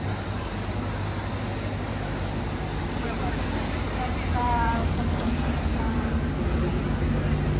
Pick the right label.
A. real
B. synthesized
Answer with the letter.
A